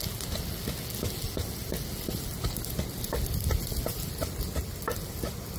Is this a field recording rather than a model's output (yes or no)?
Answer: yes